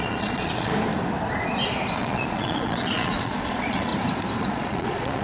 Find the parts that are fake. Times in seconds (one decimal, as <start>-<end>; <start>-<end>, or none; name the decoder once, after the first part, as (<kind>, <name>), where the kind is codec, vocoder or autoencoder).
0.0-0.7 (vocoder, Vocos); 2.0-3.9; 4.4-5.2

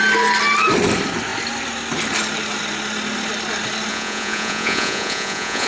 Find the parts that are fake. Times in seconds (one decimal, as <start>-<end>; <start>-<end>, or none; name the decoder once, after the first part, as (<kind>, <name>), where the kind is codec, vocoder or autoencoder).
3.9-5.7 (vocoder, Vocos)

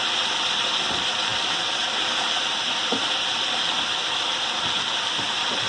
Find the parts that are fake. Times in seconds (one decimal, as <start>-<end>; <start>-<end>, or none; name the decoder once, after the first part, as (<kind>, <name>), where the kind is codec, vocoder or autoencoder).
none

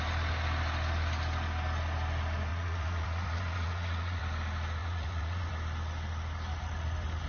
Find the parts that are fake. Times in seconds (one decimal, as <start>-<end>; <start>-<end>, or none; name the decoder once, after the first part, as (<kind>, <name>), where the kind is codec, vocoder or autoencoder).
2.5-4.2 (vocoder, Vocos); 4.8-5.5

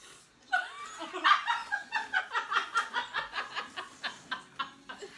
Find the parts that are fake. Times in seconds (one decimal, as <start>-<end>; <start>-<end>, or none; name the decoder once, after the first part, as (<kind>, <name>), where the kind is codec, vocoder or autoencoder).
1.6-2.2 (vocoder, Vocos); 2.6-3.5